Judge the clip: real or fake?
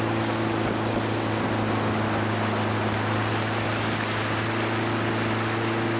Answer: real